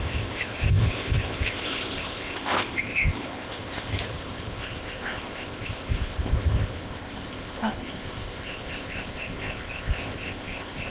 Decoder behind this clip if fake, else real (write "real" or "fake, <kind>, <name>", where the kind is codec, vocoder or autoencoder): fake, codec, ZipCodec